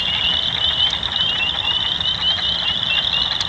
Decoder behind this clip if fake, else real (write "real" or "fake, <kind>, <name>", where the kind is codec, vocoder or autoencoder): real